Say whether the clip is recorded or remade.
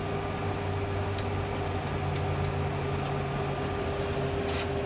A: recorded